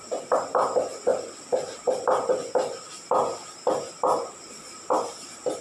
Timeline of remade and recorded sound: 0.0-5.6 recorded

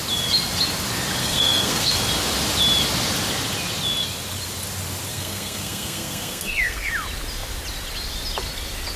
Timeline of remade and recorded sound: 0.0-1.2 recorded; 1.2-1.9 remade; 1.9-5.1 recorded; 5.1-6.9 remade; 6.9-9.0 recorded

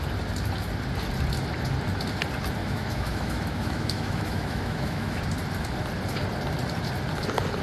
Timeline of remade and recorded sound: 0.0-2.6 recorded; 2.6-5.2 remade; 5.2-7.6 recorded

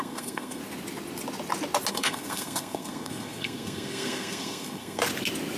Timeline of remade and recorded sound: 0.0-0.6 remade; 0.6-1.9 recorded; 1.9-5.0 remade; 5.0-5.6 recorded

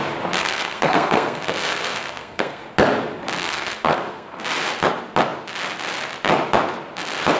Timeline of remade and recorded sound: 0.0-0.4 recorded; 0.4-2.6 remade; 2.6-3.4 recorded; 3.4-4.4 remade; 4.4-7.4 recorded